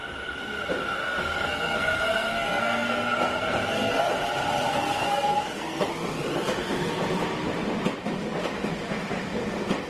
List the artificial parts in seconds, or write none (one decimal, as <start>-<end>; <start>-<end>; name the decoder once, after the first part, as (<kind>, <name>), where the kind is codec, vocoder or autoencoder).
1.0-4.1 (codec, SNAC); 4.7-5.9